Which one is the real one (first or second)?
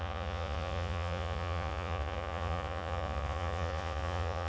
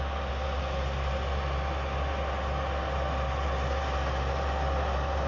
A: second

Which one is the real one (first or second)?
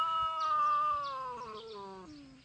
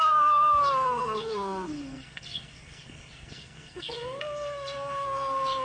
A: first